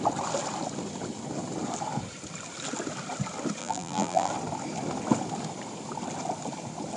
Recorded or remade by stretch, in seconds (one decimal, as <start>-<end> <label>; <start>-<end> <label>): 0.0-3.6 recorded; 3.6-4.3 remade; 4.3-7.0 recorded